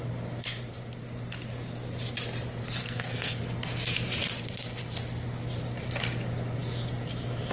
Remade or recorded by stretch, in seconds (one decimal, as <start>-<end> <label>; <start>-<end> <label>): 0.0-2.8 recorded; 2.8-3.4 remade; 3.4-7.5 recorded